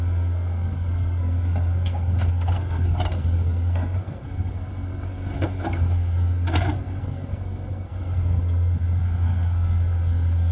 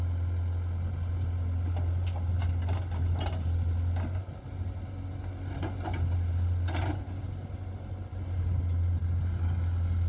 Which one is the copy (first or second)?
first